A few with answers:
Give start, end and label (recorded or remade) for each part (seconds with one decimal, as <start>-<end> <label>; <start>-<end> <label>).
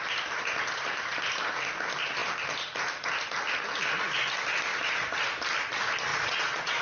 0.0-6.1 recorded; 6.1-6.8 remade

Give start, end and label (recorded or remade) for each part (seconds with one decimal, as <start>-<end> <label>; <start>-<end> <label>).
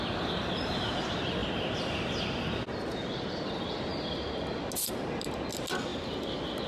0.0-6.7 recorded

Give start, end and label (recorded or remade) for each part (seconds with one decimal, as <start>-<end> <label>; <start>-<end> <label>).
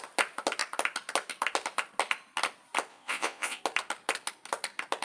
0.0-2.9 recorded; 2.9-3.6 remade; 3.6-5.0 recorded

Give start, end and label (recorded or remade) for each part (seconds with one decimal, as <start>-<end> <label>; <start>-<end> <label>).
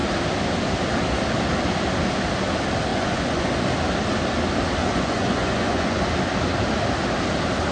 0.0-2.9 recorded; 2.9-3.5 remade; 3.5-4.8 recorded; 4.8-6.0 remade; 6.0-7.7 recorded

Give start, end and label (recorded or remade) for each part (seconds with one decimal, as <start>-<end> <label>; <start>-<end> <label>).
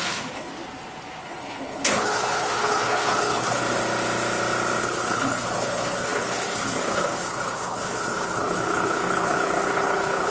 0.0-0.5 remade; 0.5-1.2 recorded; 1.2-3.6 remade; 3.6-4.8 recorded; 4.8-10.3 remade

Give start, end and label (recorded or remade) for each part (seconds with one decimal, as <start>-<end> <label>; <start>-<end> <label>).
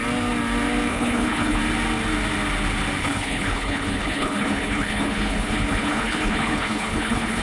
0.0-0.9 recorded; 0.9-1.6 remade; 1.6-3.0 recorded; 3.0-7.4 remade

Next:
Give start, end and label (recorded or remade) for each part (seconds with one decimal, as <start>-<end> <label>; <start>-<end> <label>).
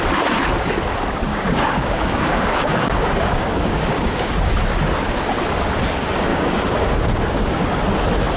0.0-1.3 recorded; 1.3-4.3 remade; 4.3-6.3 recorded; 6.3-7.6 remade; 7.6-8.4 recorded